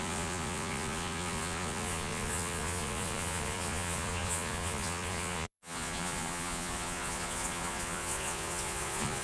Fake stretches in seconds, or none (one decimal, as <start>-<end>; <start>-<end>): 0.0-9.2

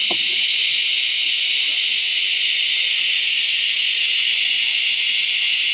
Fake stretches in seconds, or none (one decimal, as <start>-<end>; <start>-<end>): 1.7-2.6; 3.8-4.9

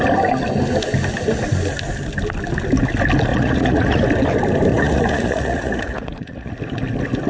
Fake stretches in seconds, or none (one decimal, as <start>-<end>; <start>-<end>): 3.3-4.0; 4.7-6.5

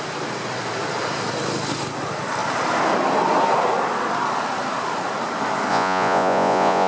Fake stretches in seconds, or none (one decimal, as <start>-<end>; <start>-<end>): 5.7-6.9

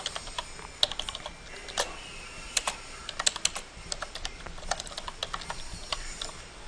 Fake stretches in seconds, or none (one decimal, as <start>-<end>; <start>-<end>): none

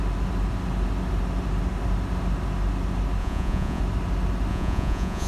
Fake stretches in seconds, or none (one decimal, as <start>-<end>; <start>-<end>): 3.2-3.8; 4.5-5.3